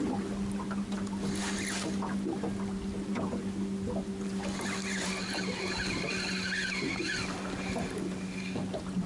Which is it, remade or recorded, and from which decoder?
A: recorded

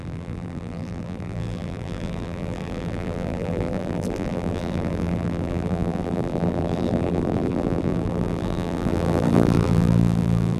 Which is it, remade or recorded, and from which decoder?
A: remade, vocoder, BigVGAN v2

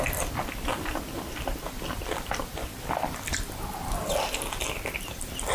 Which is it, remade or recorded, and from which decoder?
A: recorded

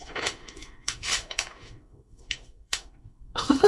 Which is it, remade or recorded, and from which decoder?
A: remade, autoencoder, DAC-VAE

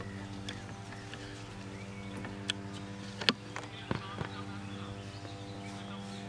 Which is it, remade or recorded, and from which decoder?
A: recorded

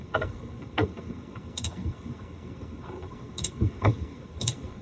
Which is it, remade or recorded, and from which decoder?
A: remade, codec, SNAC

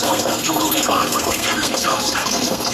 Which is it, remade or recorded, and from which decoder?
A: remade, codec, SNAC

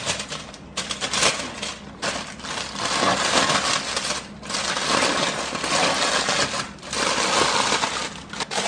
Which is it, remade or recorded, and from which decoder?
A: recorded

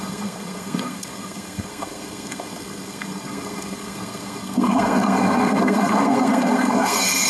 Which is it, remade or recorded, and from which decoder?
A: remade, codec, SNAC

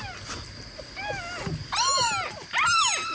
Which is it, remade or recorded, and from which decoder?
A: recorded